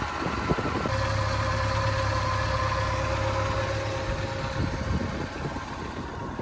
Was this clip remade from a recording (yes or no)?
no